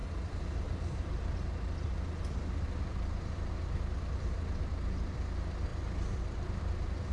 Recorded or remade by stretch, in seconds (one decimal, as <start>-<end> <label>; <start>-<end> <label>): 0.0-1.4 remade; 1.4-2.9 recorded; 2.9-4.3 remade; 4.3-5.7 recorded; 5.7-6.5 remade; 6.5-7.1 recorded